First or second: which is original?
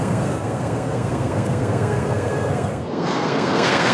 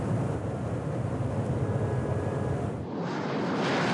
second